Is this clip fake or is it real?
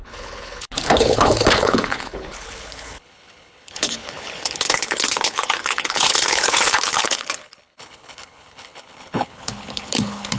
fake